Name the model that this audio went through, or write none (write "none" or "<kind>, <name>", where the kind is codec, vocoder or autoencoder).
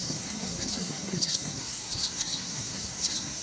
codec, SNAC